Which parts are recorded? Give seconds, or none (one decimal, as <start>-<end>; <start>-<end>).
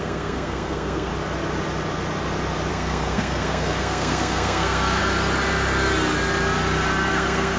1.1-2.7; 5.0-7.1